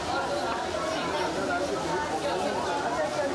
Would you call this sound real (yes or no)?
yes